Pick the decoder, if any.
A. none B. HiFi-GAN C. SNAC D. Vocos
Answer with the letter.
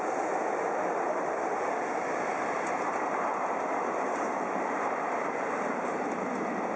A